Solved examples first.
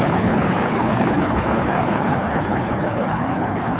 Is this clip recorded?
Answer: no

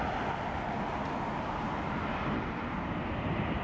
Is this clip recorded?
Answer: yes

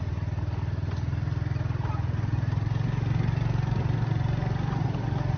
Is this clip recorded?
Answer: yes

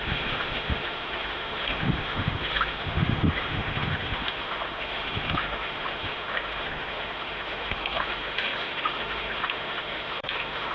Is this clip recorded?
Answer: no